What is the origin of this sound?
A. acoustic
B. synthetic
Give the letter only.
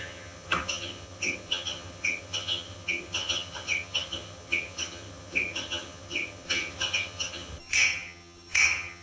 B